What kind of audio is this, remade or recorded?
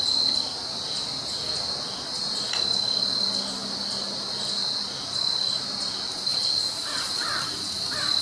recorded